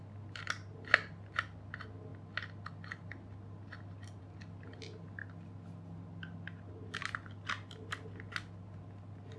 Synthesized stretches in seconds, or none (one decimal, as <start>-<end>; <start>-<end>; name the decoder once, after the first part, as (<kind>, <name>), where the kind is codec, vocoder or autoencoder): none